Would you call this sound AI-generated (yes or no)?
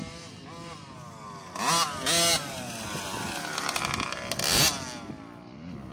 no